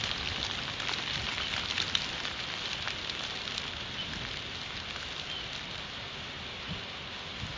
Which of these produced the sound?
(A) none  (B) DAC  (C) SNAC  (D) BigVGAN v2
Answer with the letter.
A